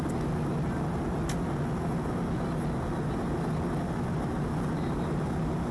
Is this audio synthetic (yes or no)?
no